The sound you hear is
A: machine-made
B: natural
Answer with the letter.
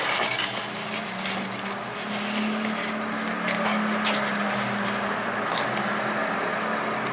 B